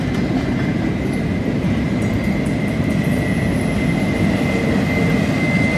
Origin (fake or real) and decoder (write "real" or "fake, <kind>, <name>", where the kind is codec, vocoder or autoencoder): real